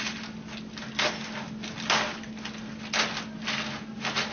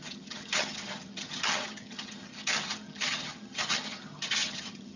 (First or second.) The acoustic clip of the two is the first